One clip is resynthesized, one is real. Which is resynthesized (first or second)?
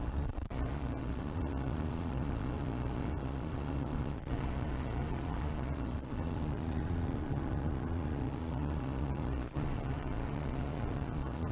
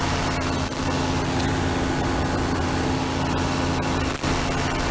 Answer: first